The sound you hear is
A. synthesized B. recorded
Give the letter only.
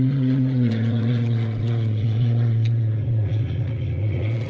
A